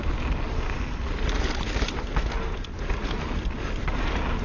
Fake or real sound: real